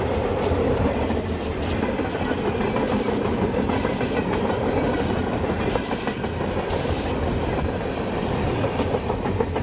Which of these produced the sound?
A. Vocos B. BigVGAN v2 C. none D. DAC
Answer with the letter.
B